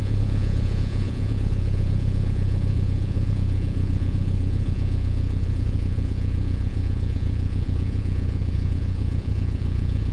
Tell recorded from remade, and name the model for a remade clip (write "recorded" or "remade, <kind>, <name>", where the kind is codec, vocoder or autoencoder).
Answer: remade, vocoder, Vocos